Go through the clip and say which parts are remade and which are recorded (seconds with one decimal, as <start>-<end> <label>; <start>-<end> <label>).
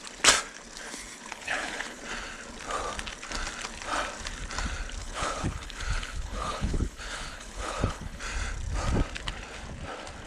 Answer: 0.0-1.3 recorded; 1.3-2.0 remade; 2.0-5.0 recorded; 5.0-8.2 remade; 8.2-10.3 recorded